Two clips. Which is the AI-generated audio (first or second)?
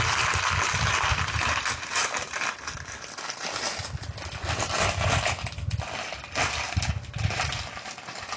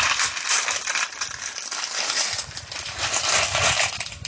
second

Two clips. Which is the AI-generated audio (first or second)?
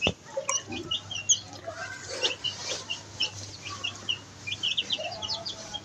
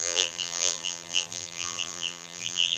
second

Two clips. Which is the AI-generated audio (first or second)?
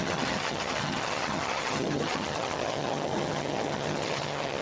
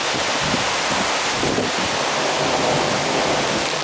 first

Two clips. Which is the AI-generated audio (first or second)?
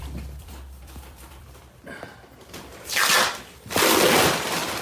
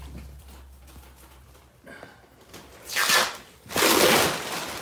first